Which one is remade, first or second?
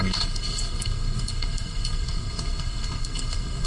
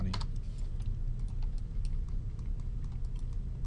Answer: first